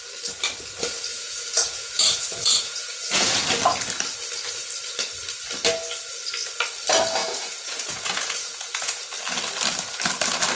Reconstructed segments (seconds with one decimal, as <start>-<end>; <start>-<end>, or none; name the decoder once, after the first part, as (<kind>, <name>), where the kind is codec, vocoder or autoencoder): 1.1-3.4 (vocoder, Vocos); 7.2-9.0